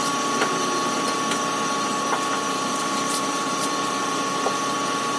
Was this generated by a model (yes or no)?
yes